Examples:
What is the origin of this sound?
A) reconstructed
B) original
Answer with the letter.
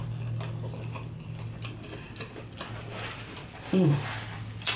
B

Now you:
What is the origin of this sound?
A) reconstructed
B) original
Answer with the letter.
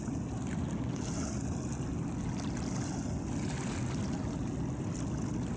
B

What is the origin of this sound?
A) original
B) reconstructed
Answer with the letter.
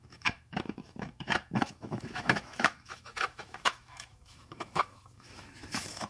B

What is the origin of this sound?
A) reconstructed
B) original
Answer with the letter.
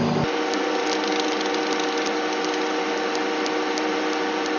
B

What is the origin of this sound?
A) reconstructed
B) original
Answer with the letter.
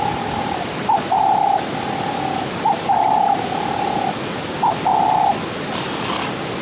B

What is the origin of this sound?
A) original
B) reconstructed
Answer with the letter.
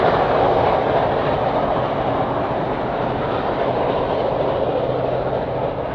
A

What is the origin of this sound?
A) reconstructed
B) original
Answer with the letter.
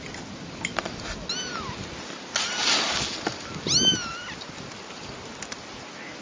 B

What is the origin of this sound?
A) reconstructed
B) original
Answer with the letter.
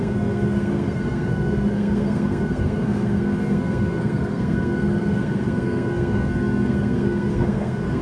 A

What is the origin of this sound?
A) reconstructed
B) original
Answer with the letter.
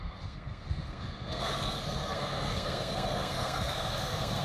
A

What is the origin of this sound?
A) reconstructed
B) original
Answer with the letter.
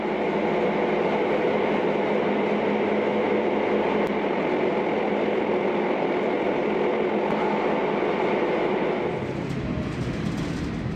B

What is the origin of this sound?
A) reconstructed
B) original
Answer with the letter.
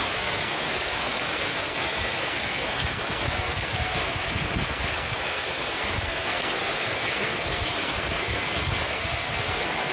A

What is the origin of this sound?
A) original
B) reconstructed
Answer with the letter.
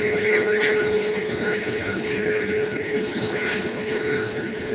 B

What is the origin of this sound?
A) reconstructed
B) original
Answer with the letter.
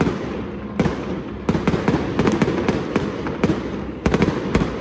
B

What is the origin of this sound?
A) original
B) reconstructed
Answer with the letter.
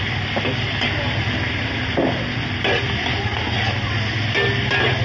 A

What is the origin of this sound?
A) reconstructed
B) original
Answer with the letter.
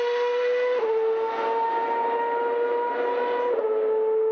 B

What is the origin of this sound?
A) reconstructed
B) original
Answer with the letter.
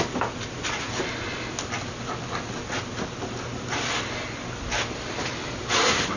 B